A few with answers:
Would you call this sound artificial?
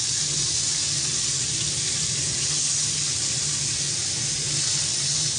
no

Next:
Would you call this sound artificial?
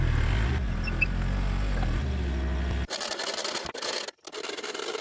no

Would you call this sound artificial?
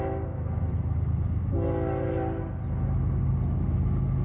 no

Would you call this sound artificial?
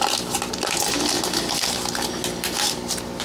no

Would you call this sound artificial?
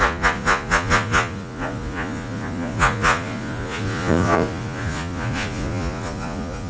yes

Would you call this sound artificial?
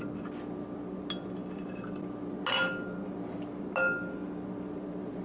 no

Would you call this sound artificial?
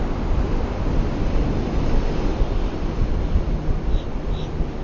no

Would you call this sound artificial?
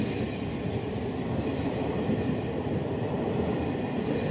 no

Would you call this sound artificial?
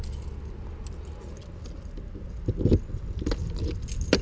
no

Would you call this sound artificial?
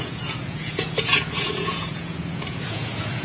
yes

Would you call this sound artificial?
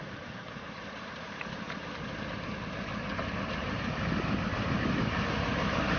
yes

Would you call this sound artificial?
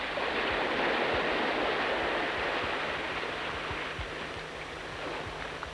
no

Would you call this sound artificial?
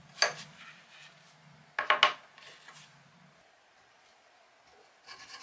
no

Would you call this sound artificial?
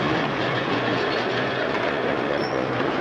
yes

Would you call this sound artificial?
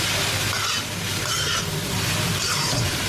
no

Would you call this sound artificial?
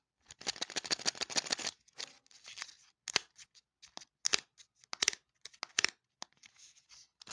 no